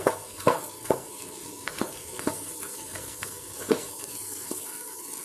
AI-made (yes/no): yes